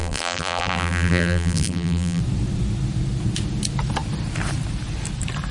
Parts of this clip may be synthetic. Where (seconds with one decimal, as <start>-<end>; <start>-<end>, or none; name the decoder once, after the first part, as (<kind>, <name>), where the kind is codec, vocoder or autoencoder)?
0.0-2.2 (vocoder, BigVGAN v2)